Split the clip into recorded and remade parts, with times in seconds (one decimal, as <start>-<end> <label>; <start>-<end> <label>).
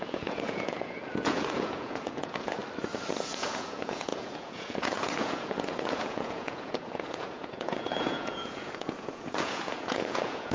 0.0-2.6 remade; 2.6-3.1 recorded; 3.1-10.5 remade